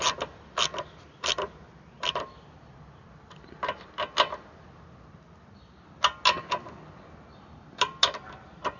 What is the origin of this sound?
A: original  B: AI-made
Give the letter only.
A